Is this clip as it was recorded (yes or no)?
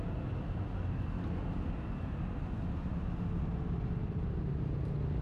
yes